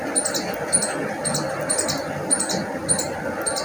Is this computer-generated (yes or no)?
no